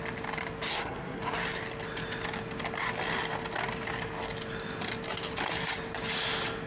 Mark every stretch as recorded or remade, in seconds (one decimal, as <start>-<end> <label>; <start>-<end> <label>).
0.0-0.7 recorded; 0.7-1.2 remade; 1.2-6.7 recorded